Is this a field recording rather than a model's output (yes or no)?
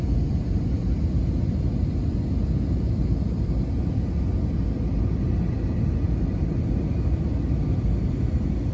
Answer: yes